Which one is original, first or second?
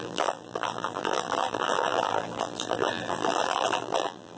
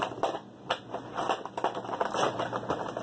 second